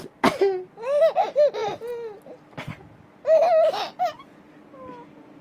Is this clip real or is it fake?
real